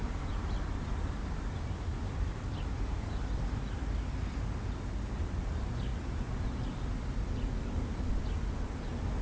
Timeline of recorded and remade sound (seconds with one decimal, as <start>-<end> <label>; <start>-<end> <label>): 0.0-9.2 recorded